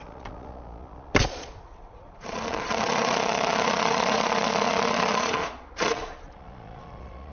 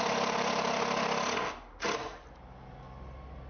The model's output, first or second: first